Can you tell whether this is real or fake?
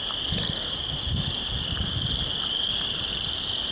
real